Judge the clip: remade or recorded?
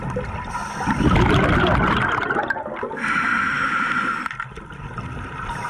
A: recorded